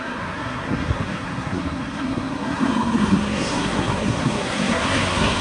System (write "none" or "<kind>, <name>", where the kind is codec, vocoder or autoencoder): codec, SNAC